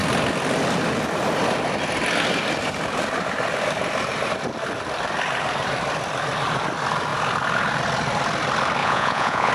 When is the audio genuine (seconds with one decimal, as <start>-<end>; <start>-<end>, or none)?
0.0-8.8